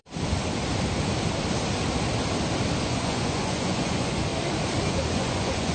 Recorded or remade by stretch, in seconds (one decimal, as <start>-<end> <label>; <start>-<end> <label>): 0.0-2.8 recorded; 2.8-4.3 remade; 4.3-4.9 recorded; 4.9-5.7 remade